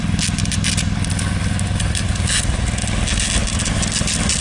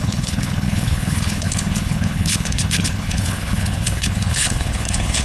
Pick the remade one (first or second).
second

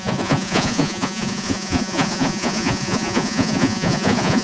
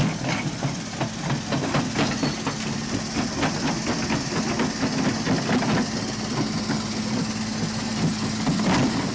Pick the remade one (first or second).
first